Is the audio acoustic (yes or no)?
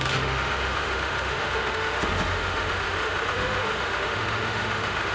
no